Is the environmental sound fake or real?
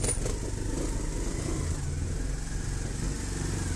real